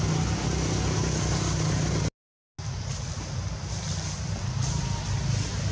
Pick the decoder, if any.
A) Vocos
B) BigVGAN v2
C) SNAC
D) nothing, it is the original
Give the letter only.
D